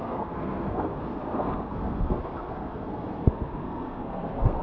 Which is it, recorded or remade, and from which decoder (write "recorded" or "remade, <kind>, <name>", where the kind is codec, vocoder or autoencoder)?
remade, codec, SNAC